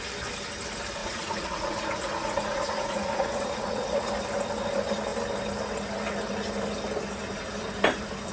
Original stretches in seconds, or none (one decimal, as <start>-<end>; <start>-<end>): 0.0-1.0; 4.1-8.3